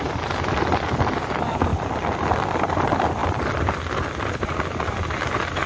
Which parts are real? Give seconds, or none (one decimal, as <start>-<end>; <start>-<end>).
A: 0.0-1.7; 2.8-3.2; 4.9-5.7